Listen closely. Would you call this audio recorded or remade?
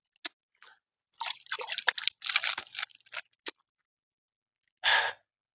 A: recorded